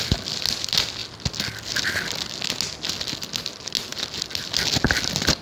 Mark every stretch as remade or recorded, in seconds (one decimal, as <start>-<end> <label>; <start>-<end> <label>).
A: 0.0-5.4 recorded